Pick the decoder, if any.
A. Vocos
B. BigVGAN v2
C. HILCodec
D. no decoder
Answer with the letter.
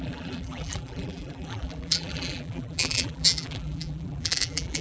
B